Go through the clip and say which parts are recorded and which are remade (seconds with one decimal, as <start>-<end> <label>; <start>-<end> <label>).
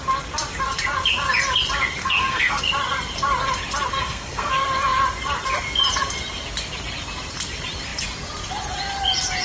0.0-2.0 recorded; 2.0-2.6 remade; 2.6-3.9 recorded; 3.9-4.5 remade; 4.5-9.4 recorded